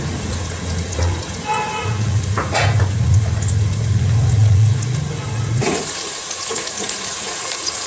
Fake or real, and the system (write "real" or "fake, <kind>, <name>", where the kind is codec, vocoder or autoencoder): fake, vocoder, Vocos